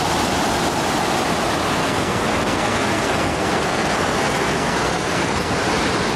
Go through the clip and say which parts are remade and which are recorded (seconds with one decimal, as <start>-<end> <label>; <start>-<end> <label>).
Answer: 0.0-1.8 recorded; 1.8-5.5 remade; 5.5-6.2 recorded

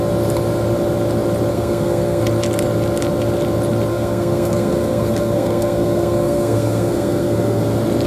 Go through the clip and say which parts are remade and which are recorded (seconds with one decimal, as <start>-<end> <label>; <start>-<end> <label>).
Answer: 0.0-1.5 recorded; 1.5-2.2 remade; 2.2-3.9 recorded; 3.9-7.6 remade; 7.6-8.1 recorded

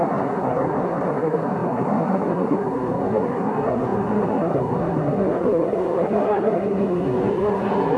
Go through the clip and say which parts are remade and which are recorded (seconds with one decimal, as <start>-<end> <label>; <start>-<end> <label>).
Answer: 0.0-8.0 remade

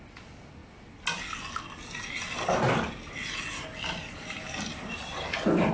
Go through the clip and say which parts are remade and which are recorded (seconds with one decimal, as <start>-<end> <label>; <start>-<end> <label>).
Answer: 0.0-5.7 recorded

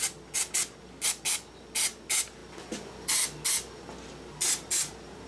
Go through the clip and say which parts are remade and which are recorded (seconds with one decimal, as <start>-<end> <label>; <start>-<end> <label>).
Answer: 0.0-5.3 recorded